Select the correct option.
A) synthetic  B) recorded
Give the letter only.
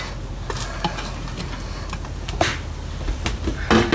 B